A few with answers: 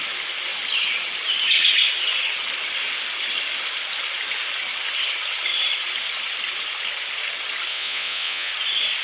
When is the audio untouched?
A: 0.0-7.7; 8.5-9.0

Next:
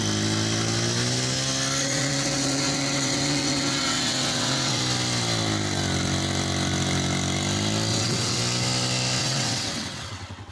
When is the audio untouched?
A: 0.0-1.8; 4.8-7.9; 8.4-9.2